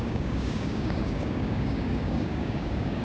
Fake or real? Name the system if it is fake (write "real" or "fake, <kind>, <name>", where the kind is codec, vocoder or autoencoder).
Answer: fake, codec, DAC